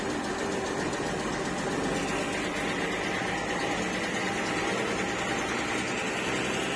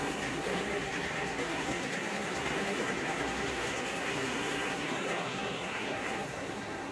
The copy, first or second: second